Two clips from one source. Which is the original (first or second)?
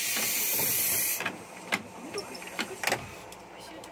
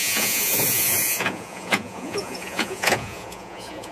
first